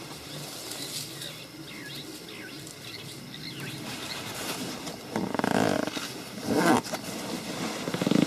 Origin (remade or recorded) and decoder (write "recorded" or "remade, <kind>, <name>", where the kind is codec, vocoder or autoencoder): recorded